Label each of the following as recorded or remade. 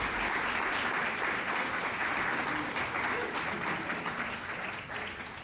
recorded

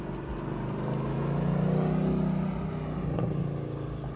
recorded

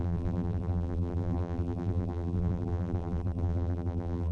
remade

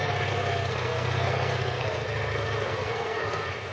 remade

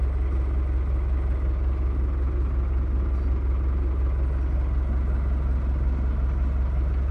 recorded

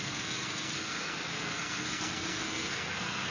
remade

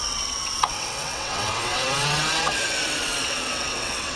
remade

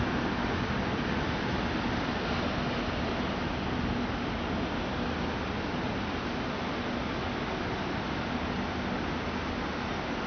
recorded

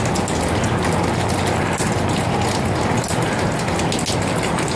recorded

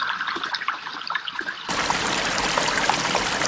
recorded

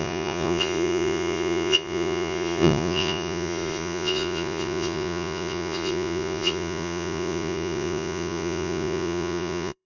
remade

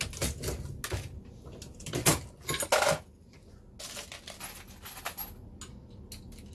recorded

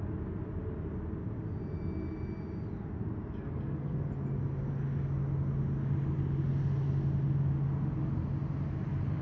recorded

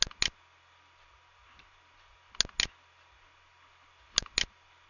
recorded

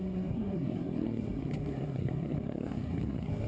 remade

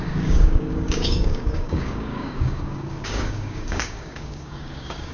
remade